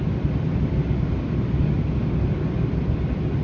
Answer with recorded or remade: recorded